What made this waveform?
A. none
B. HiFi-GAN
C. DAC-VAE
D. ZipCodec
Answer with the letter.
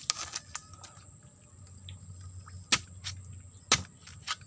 A